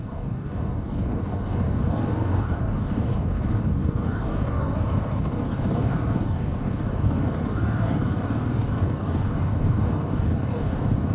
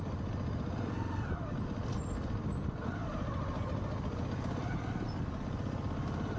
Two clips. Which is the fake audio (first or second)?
first